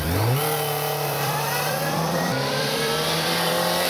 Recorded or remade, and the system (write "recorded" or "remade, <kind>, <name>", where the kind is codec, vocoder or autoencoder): remade, vocoder, BigVGAN v2